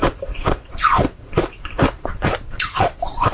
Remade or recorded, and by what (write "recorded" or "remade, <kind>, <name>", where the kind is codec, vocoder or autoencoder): remade, vocoder, BigVGAN v2